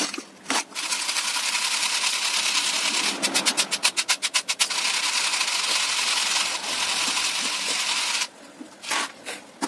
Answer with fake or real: real